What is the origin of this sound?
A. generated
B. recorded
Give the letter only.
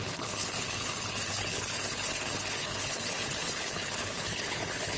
A